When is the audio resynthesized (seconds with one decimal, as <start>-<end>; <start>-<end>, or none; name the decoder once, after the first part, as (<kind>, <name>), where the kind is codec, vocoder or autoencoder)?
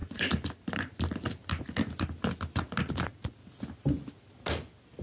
0.0-1.6 (vocoder, BigVGAN v2)